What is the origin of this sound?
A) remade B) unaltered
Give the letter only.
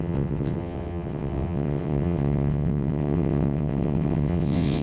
A